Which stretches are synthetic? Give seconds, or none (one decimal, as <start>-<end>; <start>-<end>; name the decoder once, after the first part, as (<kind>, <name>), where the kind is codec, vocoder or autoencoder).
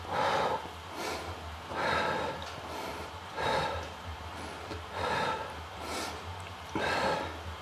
2.8-6.8 (vocoder, BigVGAN v2)